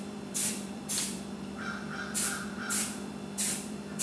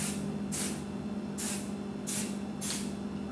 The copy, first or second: first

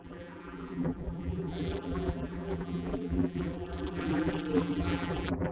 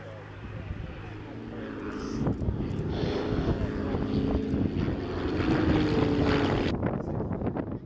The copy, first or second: first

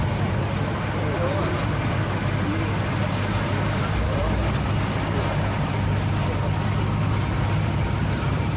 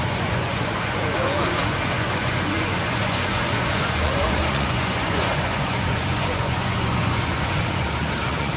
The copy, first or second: second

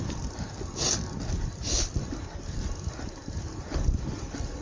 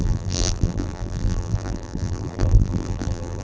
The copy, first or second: second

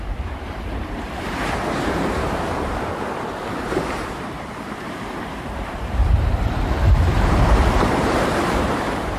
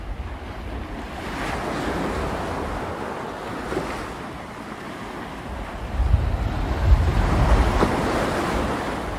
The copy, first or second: first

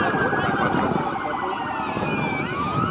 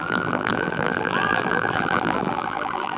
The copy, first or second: second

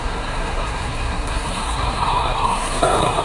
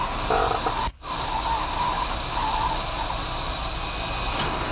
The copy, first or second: first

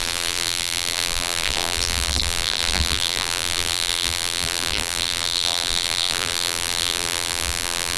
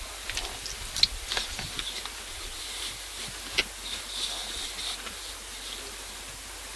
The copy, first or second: first